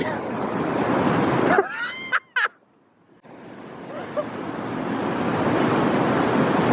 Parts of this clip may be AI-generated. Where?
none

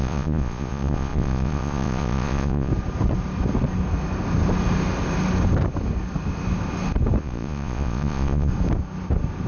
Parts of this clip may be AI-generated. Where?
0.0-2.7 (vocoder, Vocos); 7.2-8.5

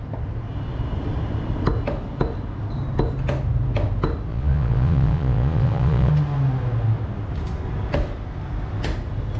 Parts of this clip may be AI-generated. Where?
4.3-6.1 (vocoder, Vocos)

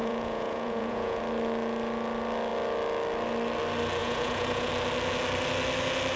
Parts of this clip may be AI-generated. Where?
0.0-1.2 (vocoder, Vocos); 4.0-4.7